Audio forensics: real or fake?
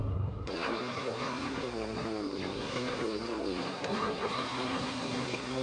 fake